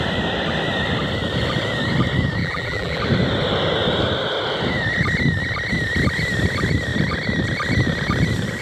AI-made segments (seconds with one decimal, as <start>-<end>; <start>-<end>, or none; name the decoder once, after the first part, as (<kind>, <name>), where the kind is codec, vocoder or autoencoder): 2.4-3.0 (vocoder, BigVGAN v2)